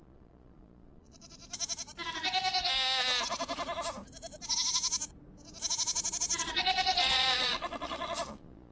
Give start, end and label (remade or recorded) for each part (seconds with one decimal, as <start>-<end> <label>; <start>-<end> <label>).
0.0-1.4 remade; 1.4-6.4 recorded; 6.4-8.7 remade